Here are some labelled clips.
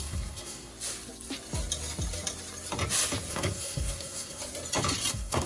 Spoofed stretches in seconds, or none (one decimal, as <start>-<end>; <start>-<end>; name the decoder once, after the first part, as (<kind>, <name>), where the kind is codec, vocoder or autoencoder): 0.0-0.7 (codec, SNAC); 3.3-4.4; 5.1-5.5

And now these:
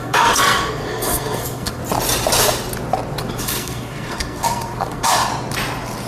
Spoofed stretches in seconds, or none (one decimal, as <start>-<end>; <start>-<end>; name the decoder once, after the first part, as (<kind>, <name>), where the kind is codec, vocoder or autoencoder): 0.0-1.8 (codec, SNAC); 3.4-5.3

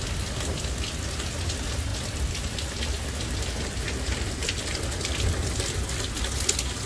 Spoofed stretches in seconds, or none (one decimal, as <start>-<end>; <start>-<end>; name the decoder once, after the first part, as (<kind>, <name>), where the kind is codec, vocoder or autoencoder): none

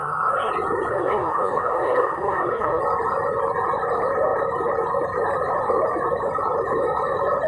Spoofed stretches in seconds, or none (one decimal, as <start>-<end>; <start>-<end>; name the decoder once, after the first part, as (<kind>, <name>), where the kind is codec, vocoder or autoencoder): 0.0-0.5 (codec, SNAC); 0.9-2.8

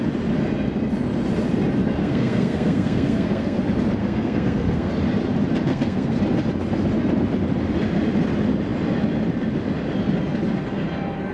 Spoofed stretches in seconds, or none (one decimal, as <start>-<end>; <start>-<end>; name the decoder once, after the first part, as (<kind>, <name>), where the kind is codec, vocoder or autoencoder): 2.0-3.6 (codec, SNAC); 4.0-4.9; 5.7-6.2